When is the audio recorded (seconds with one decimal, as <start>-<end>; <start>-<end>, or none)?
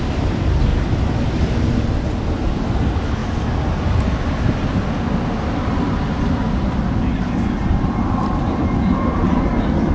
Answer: 0.0-0.7; 2.1-7.6; 9.5-9.9